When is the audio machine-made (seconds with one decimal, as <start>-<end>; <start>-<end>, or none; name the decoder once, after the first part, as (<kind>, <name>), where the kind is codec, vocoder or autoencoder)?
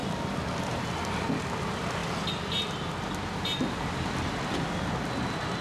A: 0.0-2.0 (vocoder, BigVGAN v2); 5.0-5.6